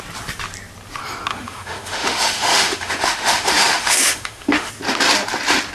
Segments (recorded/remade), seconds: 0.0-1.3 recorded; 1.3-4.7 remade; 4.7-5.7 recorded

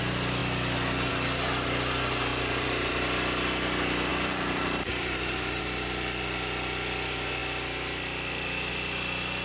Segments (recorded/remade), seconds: 0.0-2.3 recorded; 2.3-2.9 remade; 2.9-4.1 recorded; 4.1-5.6 remade; 5.6-9.4 recorded

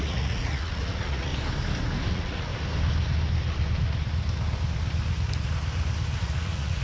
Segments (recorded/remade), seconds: 0.0-1.3 remade; 1.3-2.1 recorded; 2.1-2.5 remade; 2.5-6.2 recorded; 6.2-6.8 remade

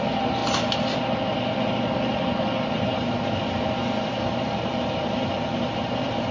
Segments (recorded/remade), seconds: 0.0-0.4 remade; 0.4-4.2 recorded; 4.2-6.3 remade

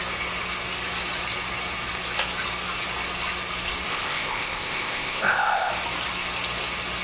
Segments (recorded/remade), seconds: 0.0-3.9 recorded; 3.9-5.7 remade; 5.7-7.0 recorded

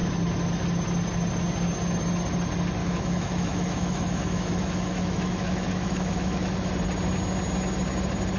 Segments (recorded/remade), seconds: 0.0-2.8 recorded; 2.8-6.7 remade; 6.7-8.4 recorded